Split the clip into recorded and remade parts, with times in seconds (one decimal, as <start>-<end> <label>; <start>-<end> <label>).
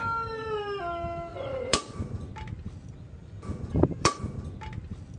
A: 0.0-1.3 recorded; 1.3-2.3 remade; 2.3-3.2 recorded; 3.2-4.2 remade; 4.2-5.2 recorded